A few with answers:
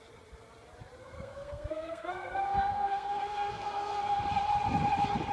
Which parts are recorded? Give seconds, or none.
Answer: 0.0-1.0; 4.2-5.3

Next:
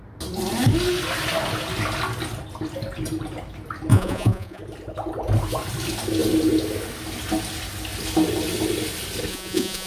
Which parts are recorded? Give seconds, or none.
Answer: 0.0-3.9; 4.6-9.3

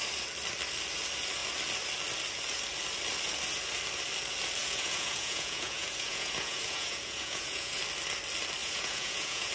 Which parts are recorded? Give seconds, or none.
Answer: 0.0-4.6; 7.8-8.6

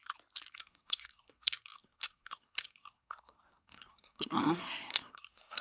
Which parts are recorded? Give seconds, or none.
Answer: 0.0-0.5